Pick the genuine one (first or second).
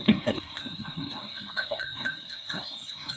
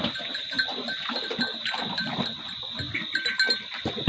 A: second